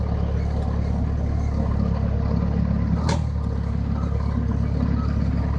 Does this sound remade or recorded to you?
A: recorded